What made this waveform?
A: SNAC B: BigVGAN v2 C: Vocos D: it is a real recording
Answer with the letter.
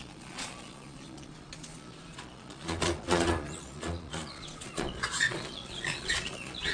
C